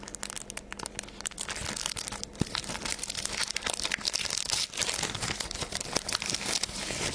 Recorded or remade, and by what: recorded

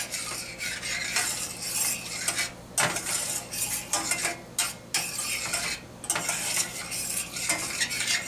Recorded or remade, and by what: recorded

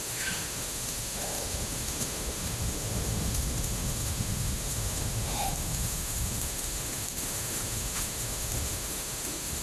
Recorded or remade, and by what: remade, autoencoder, DAC-VAE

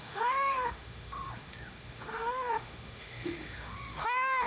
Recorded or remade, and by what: remade, autoencoder, DAC-VAE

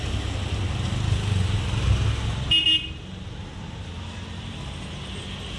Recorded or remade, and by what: recorded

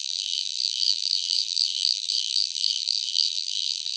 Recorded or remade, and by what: remade, vocoder, BigVGAN v2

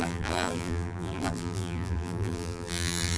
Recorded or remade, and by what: remade, vocoder, BigVGAN v2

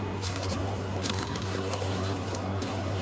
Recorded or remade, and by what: remade, codec, SNAC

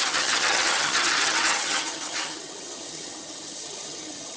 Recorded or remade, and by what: remade, vocoder, HiFi-GAN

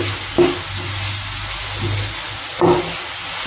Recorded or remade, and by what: recorded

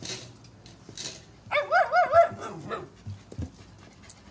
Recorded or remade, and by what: recorded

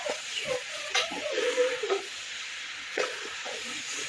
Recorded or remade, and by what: remade, vocoder, Vocos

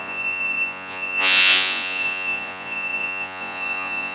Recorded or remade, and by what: remade, vocoder, Vocos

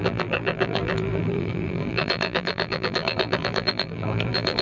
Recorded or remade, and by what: remade, vocoder, BigVGAN v2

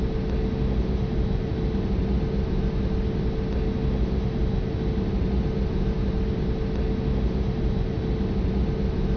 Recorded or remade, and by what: recorded